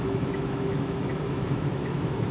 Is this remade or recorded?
remade